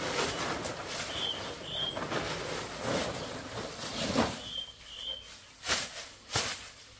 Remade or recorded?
recorded